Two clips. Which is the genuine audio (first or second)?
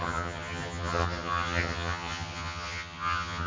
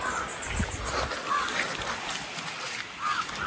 second